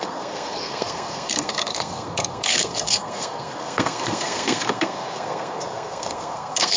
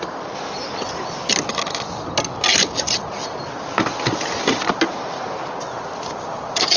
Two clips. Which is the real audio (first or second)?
second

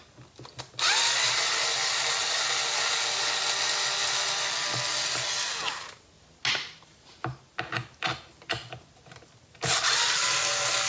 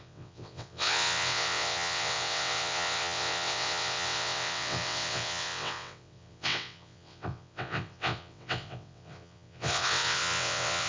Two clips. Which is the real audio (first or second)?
first